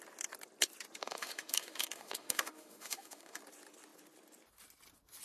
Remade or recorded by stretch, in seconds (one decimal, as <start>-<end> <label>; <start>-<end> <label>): 0.0-1.0 recorded; 1.0-3.4 remade; 3.4-5.2 recorded